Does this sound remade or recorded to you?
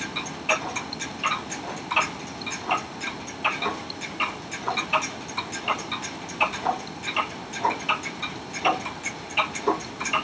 recorded